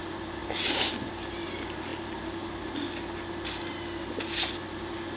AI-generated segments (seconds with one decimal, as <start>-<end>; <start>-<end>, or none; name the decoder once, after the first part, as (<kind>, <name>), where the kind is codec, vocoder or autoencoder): 0.4-1.1 (vocoder, BigVGAN v2)